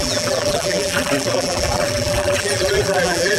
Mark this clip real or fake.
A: fake